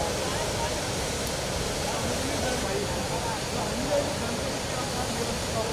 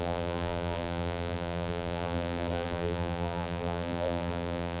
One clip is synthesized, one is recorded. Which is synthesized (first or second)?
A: second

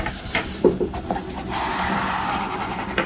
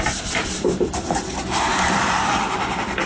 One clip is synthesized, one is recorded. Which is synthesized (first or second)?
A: second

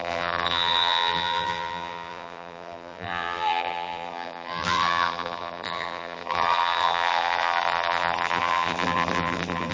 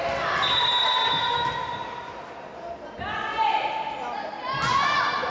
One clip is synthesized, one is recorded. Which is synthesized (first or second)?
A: first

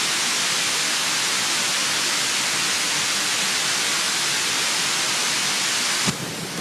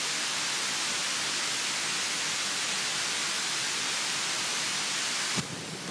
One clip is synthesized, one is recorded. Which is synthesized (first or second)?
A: second